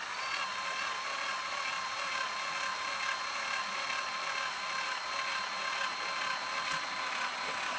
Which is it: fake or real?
real